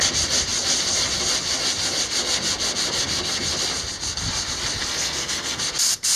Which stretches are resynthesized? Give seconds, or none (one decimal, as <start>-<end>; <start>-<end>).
4.8-5.6